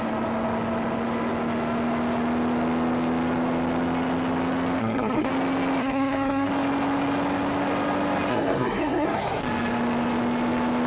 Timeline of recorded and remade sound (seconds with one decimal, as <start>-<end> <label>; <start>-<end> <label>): 0.0-4.8 recorded; 4.8-5.3 remade; 5.3-5.8 recorded; 5.8-6.5 remade; 6.5-8.3 recorded; 8.3-9.4 remade; 9.4-10.9 recorded